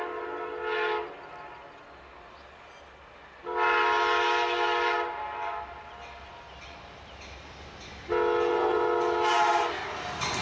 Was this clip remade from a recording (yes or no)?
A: no